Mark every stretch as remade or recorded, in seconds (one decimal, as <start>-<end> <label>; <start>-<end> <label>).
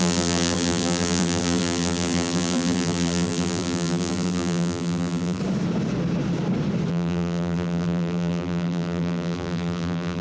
0.0-5.4 remade; 5.4-6.9 recorded; 6.9-10.2 remade